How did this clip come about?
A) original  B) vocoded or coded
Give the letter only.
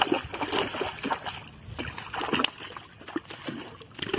A